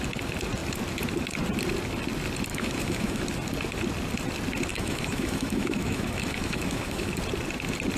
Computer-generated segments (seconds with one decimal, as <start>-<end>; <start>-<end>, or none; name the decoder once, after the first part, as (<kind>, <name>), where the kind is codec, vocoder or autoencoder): 2.5-3.2 (autoencoder, DAC-VAE); 4.7-7.1